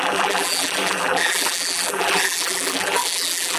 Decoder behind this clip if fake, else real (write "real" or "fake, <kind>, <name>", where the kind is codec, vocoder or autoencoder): fake, vocoder, BigVGAN v2